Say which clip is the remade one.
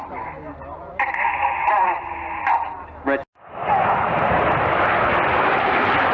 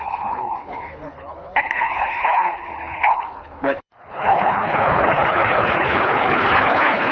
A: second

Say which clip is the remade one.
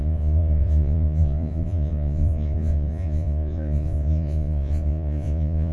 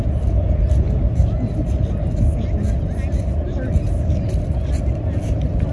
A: first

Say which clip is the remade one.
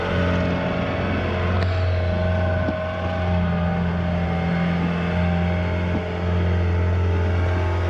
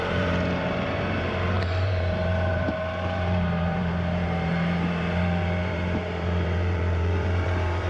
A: second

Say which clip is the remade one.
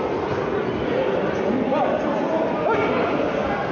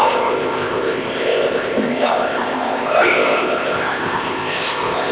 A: second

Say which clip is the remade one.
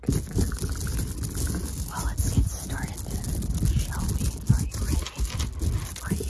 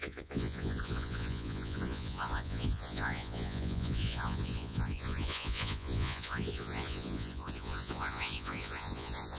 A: second